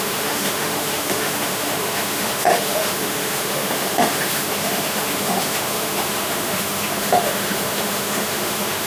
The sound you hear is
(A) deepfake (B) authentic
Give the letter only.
A